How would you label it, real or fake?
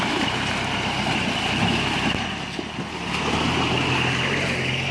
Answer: real